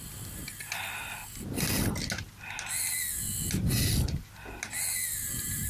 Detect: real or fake real